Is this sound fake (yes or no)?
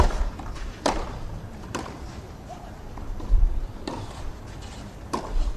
no